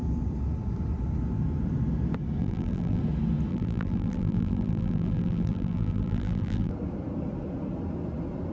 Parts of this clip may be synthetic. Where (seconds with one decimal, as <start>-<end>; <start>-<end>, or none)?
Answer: 2.4-3.0; 3.5-6.7